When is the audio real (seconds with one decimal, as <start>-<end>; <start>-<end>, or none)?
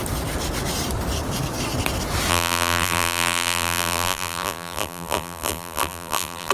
0.0-2.3